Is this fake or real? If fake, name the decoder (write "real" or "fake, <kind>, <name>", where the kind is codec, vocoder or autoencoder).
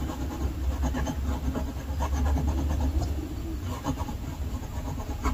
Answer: real